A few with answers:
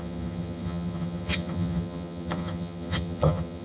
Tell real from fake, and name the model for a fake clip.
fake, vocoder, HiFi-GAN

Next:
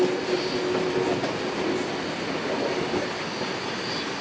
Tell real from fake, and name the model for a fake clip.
real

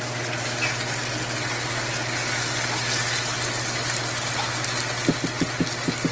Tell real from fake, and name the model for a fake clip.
real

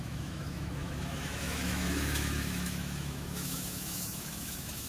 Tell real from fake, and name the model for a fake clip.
fake, autoencoder, DAC-VAE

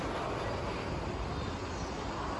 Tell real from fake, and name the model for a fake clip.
real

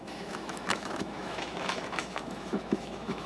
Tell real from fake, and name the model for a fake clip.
fake, autoencoder, DAC-VAE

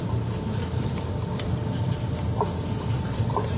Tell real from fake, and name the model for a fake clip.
fake, vocoder, BigVGAN v2